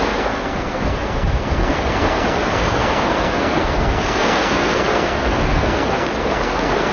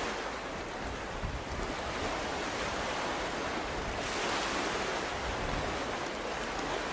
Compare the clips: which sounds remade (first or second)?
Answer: first